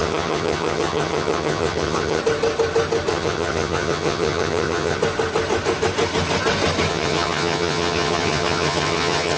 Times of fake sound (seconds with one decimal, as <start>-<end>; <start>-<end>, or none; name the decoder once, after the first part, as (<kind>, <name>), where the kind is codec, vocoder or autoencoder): 0.0-2.2 (vocoder, HiFi-GAN); 3.1-5.0; 6.9-9.4